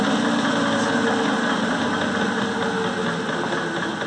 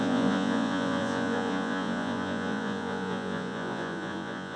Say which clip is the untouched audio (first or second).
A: first